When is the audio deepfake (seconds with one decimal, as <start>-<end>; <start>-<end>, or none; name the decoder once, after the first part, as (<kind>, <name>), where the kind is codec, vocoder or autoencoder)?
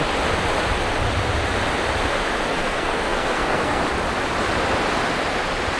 2.5-3.8 (codec, SNAC)